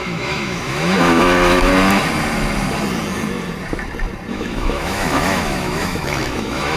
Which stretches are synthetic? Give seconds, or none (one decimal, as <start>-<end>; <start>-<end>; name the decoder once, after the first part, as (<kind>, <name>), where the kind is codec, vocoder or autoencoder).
0.0-1.7 (autoencoder, DAC-VAE); 4.3-6.8